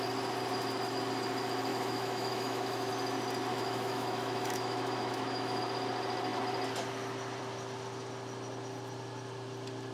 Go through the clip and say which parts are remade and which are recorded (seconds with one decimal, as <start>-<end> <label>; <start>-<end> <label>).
0.0-1.7 recorded; 1.7-2.9 remade; 2.9-3.5 recorded; 3.5-5.6 remade; 5.6-9.9 recorded